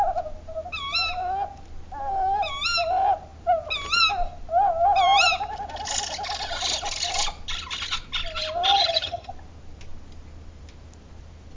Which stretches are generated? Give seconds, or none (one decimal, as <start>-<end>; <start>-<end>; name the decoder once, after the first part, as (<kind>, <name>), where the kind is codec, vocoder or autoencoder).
8.7-9.3 (vocoder, HiFi-GAN)